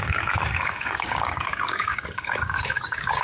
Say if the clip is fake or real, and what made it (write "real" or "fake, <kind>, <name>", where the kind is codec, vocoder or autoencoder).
fake, codec, DAC